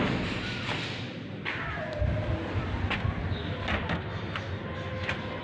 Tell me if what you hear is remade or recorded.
recorded